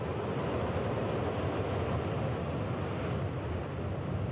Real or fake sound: real